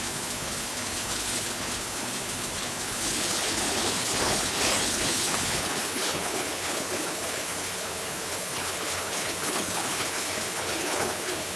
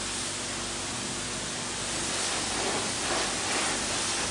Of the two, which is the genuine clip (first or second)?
second